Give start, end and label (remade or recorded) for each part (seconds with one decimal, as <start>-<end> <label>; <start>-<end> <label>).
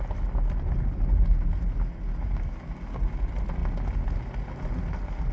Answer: 0.0-5.3 recorded